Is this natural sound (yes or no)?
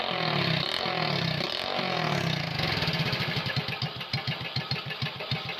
yes